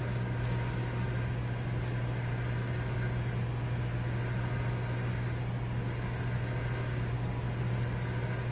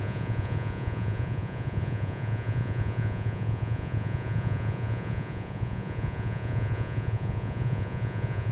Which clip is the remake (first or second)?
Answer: second